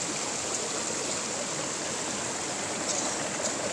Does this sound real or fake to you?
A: real